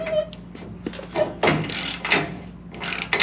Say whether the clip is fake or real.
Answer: real